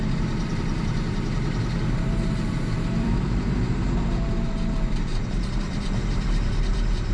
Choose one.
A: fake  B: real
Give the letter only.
A